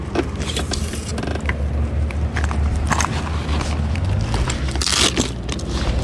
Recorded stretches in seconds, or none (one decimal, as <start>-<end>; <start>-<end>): 0.0-6.0